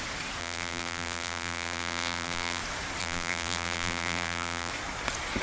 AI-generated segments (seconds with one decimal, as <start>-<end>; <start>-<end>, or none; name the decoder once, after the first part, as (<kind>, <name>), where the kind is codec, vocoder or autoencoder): 0.4-2.6 (vocoder, BigVGAN v2); 3.0-4.7

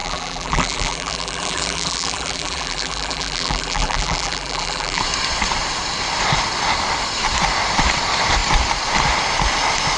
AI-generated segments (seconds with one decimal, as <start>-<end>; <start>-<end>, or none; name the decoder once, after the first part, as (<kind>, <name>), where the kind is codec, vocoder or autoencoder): 0.0-5.0 (vocoder, BigVGAN v2)

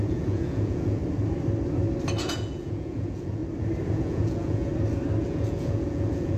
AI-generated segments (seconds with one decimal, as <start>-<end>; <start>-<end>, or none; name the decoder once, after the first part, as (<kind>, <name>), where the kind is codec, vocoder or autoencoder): 0.0-1.0 (vocoder, Vocos); 2.2-3.4; 3.9-4.7; 5.2-6.4